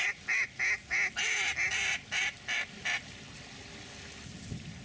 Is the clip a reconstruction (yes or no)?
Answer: no